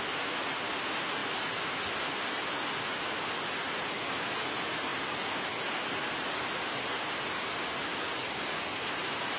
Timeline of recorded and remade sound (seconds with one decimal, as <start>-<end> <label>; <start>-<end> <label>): 0.0-9.4 recorded